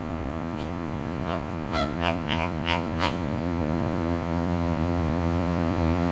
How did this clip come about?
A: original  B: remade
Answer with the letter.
B